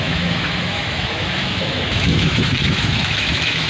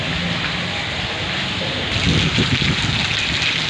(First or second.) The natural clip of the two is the second